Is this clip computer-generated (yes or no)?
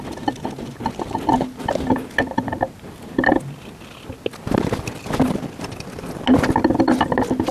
no